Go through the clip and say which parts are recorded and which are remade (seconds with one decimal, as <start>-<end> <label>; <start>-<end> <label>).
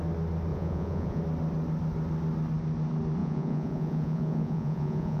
0.0-0.5 recorded; 0.5-1.2 remade; 1.2-3.2 recorded; 3.2-5.2 remade